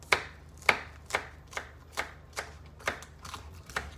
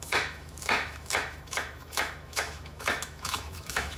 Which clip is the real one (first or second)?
first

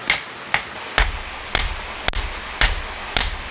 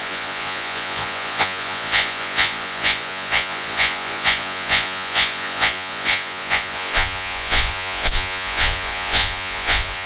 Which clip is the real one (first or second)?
first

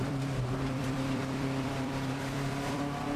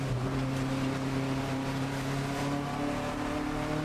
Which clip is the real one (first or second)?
second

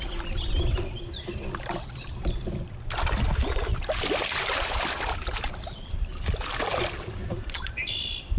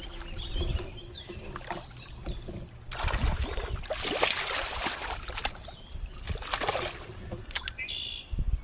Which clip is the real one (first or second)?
second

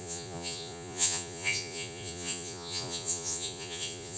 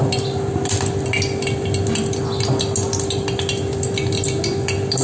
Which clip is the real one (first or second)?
second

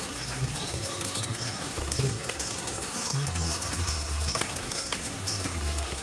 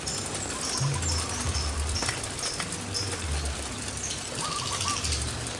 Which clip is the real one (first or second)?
second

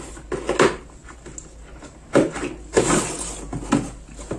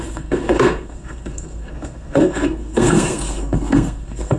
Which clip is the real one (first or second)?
first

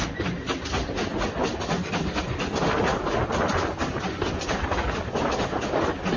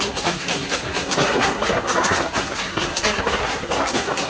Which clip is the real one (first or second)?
first